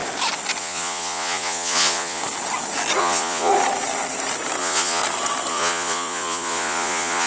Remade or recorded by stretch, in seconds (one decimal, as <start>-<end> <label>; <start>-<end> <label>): 0.0-0.6 recorded; 0.6-2.2 remade; 2.2-3.0 recorded; 3.0-3.5 remade; 3.5-4.6 recorded; 4.6-5.0 remade; 5.0-5.5 recorded; 5.5-7.3 remade